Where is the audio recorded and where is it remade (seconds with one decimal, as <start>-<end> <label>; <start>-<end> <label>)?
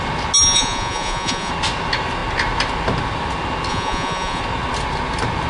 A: 0.0-0.4 recorded; 0.4-1.5 remade; 1.5-3.7 recorded; 3.7-4.4 remade; 4.4-5.5 recorded